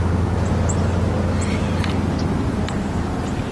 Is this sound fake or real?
real